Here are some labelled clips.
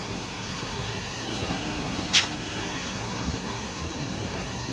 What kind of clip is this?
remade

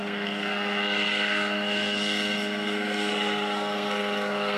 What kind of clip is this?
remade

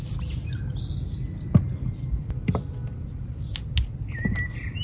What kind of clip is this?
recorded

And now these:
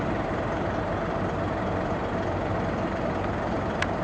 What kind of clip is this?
recorded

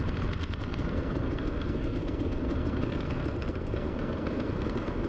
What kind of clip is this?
remade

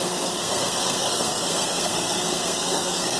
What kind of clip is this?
remade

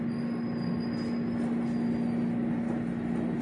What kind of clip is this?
recorded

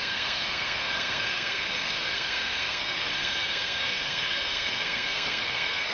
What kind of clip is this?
remade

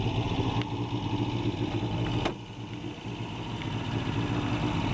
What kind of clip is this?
recorded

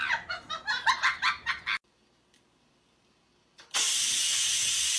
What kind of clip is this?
recorded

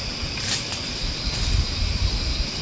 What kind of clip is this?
recorded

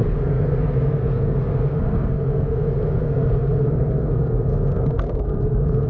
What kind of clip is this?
remade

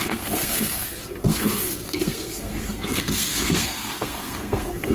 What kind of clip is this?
remade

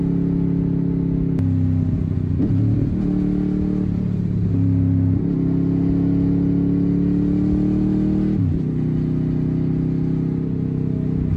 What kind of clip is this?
recorded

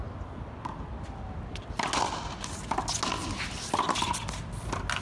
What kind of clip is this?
recorded